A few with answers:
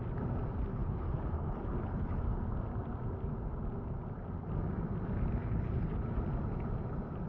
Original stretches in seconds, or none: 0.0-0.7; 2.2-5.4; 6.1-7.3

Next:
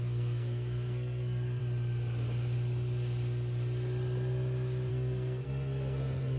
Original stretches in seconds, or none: 1.6-4.9

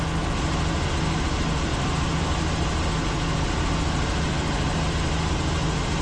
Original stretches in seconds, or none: 0.0-6.0